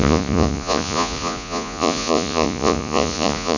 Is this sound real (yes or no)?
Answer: no